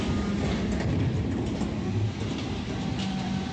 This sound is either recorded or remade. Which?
recorded